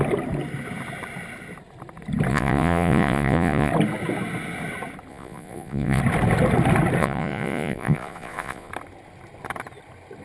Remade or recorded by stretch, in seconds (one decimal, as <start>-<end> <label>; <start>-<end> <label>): 0.0-2.3 recorded; 2.3-3.7 remade; 3.7-5.1 recorded; 5.1-6.0 remade; 6.0-7.0 recorded; 7.0-8.7 remade; 8.7-10.2 recorded